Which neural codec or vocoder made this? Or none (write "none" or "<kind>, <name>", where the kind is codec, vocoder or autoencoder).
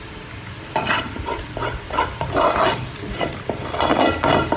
vocoder, BigVGAN v2